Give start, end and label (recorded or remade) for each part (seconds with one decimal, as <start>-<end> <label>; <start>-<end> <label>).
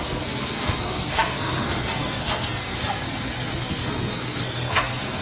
0.0-5.2 remade